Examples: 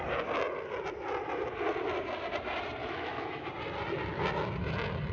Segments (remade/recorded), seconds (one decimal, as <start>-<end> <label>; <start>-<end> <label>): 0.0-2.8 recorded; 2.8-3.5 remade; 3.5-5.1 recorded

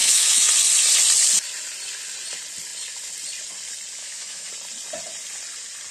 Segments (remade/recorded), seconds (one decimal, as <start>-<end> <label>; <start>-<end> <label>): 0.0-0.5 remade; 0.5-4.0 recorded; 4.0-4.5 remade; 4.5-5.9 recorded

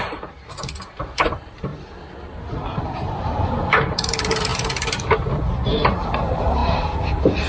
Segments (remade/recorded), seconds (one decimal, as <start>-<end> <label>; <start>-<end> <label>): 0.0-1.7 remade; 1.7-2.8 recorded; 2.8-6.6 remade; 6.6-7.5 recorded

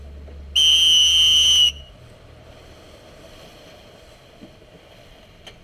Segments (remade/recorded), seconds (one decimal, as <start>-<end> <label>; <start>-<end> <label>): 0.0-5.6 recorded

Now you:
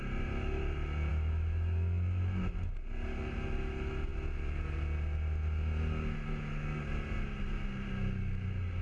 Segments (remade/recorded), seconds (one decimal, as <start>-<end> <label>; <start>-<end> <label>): 0.0-1.1 recorded; 1.1-2.7 remade; 2.7-8.8 recorded

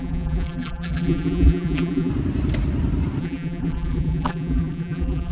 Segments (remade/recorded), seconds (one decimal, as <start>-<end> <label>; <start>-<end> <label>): 0.0-2.1 remade; 2.1-3.2 recorded; 3.2-5.3 remade

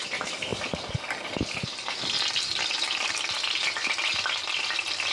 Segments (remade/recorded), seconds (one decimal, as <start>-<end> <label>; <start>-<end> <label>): 0.0-5.1 recorded

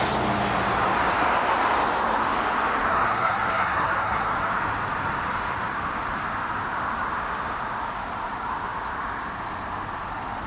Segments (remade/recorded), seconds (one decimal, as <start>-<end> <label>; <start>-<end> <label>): 0.0-2.9 recorded; 2.9-4.5 remade; 4.5-10.5 recorded